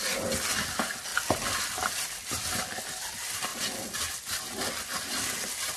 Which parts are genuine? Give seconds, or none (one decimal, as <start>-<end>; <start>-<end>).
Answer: 0.0-5.8